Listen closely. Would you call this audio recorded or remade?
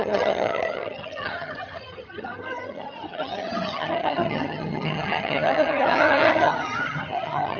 remade